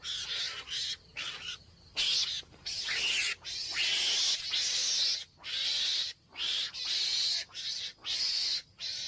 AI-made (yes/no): no